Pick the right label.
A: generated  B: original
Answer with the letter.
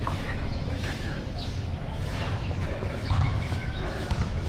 A